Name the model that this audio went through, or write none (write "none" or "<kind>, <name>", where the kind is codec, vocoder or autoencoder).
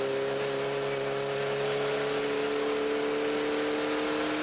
none